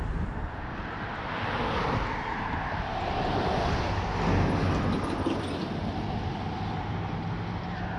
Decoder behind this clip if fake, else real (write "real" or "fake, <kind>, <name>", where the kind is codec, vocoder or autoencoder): real